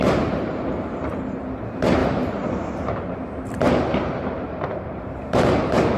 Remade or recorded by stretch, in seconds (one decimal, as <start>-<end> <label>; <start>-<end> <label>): 0.0-2.0 recorded; 2.0-5.6 remade; 5.6-6.0 recorded